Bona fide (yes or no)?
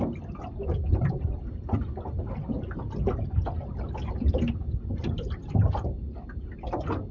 yes